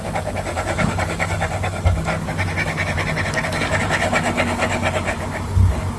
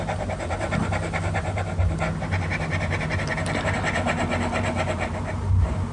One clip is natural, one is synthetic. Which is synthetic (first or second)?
first